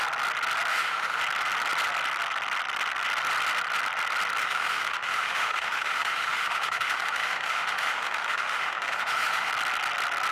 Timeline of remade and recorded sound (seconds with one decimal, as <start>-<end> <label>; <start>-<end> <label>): 0.0-0.7 recorded; 0.7-1.2 remade; 1.2-4.4 recorded; 4.4-9.5 remade; 9.5-10.3 recorded